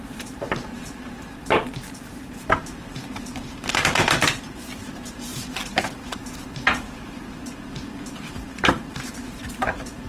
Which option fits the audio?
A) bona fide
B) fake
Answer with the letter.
B